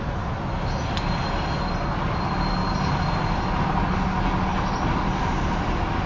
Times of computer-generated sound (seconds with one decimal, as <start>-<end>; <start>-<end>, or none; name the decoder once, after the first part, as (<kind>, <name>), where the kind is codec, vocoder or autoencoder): none